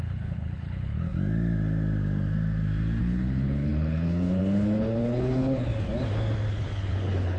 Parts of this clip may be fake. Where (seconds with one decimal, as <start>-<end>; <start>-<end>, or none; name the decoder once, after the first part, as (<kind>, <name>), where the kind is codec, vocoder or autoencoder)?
0.0-1.1 (codec, HILCodec); 3.0-5.7; 6.5-7.4